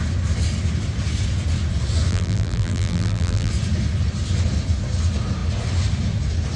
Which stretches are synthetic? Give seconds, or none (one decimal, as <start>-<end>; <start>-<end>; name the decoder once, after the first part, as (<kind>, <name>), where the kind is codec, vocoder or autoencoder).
2.1-3.5 (vocoder, BigVGAN v2)